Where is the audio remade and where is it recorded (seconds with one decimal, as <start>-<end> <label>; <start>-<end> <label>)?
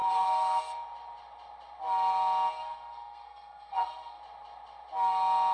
0.0-0.6 remade; 0.6-2.6 recorded; 2.6-4.2 remade; 4.2-5.5 recorded